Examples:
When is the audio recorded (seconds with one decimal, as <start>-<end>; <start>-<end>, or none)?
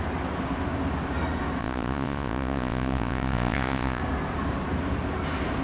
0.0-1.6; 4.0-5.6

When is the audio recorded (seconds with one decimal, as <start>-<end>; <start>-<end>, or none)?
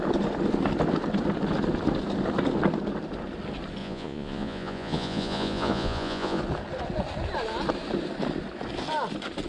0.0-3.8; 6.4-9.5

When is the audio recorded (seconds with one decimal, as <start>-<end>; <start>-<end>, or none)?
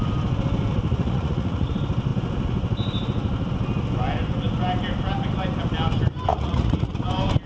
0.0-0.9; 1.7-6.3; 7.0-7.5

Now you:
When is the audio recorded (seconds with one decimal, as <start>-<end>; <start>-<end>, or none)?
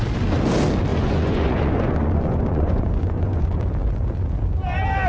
0.0-0.9; 3.6-5.1